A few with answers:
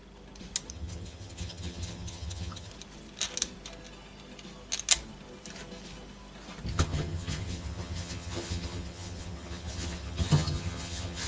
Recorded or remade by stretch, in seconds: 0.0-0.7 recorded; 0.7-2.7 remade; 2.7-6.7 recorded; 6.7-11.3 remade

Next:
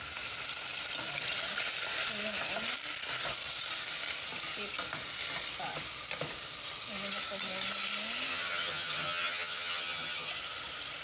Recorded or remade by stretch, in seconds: 0.0-8.3 recorded; 8.3-10.3 remade; 10.3-11.0 recorded

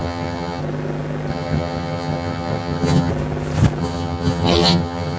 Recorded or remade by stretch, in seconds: 0.0-0.6 remade; 0.6-1.3 recorded; 1.3-3.1 remade; 3.1-3.8 recorded; 3.8-5.2 remade

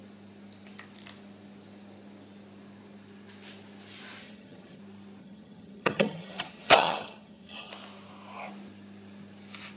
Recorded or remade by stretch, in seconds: 0.0-4.2 recorded; 4.2-4.8 remade; 4.8-5.2 recorded; 5.2-7.7 remade; 7.7-9.8 recorded

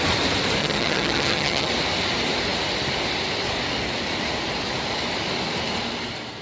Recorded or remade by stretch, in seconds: 0.0-0.6 recorded; 0.6-1.7 remade; 1.7-6.4 recorded

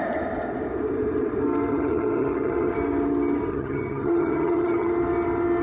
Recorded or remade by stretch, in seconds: 0.0-1.7 recorded; 1.7-2.7 remade; 2.7-3.5 recorded; 3.5-4.9 remade; 4.9-5.6 recorded

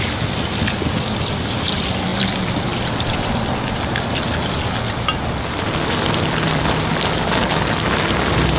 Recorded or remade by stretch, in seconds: 0.0-8.6 recorded